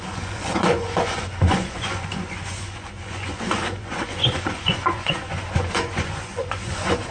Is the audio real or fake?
fake